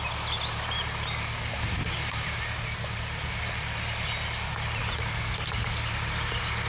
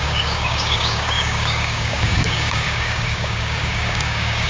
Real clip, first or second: first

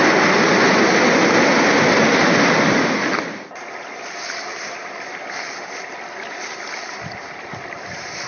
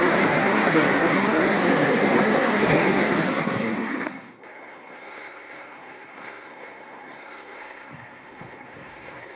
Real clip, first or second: first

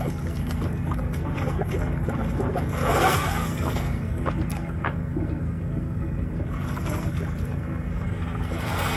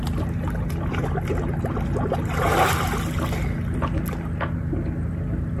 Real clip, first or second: second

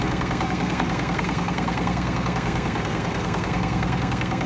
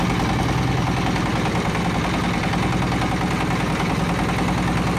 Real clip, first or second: second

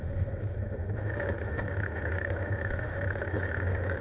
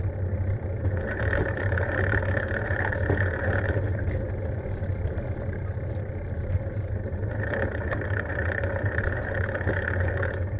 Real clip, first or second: second